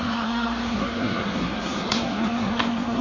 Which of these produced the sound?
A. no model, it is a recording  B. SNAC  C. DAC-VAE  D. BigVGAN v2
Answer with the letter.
B